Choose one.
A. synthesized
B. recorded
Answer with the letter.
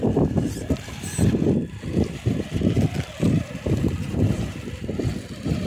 B